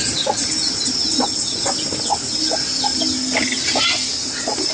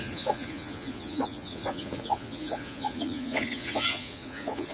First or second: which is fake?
second